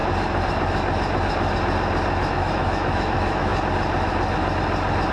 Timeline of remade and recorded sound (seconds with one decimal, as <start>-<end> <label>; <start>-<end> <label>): 0.0-2.3 recorded; 2.3-3.5 remade; 3.5-5.1 recorded